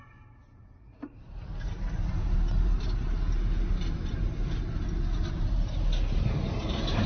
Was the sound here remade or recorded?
recorded